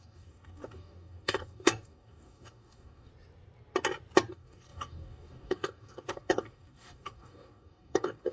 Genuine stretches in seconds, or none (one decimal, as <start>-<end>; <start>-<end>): 3.1-4.3